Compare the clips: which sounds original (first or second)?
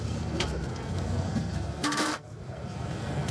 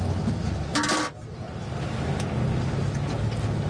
second